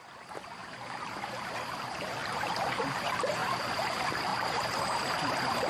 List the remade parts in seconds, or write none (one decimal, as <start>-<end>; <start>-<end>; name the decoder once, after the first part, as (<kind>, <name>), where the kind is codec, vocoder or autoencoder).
0.0-3.4 (vocoder, BigVGAN v2); 3.9-5.7